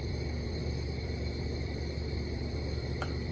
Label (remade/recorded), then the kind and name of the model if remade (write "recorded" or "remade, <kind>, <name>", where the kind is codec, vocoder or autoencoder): remade, vocoder, BigVGAN v2